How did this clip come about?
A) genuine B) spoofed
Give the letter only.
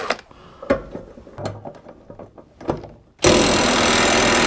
A